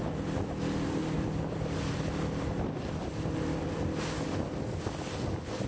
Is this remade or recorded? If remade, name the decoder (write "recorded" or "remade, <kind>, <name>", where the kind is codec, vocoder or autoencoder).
recorded